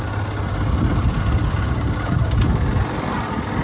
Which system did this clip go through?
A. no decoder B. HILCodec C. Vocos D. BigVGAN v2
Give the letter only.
A